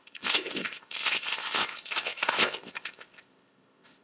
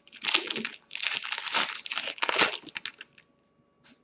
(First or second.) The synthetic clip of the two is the first